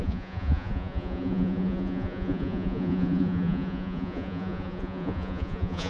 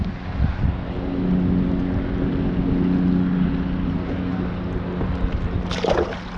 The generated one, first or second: first